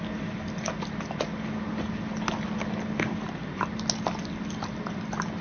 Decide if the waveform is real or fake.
real